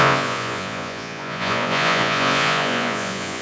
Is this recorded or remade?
remade